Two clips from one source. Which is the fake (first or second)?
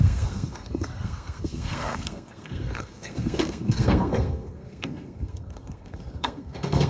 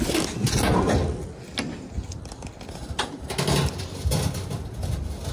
first